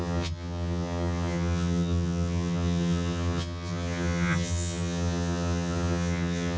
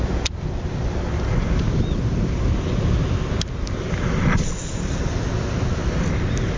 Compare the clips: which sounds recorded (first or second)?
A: second